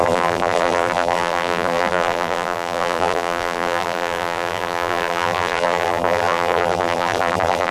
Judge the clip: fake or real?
fake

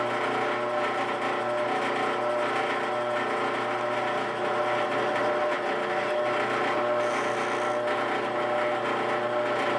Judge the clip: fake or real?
real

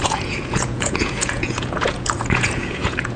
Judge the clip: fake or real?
fake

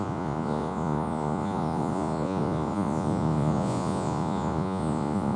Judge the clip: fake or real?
fake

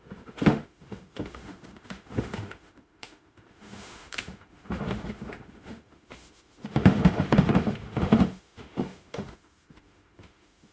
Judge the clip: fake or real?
fake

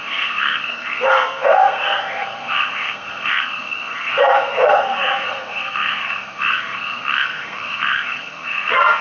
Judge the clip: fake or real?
fake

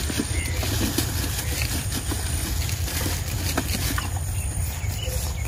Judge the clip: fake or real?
real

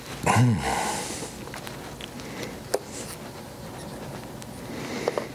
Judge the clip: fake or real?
real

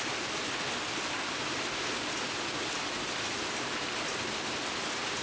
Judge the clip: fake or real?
real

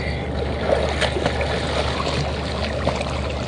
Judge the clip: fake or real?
real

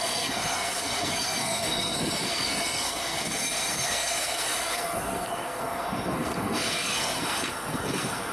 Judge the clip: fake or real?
fake